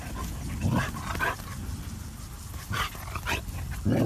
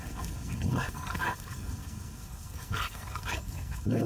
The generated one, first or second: second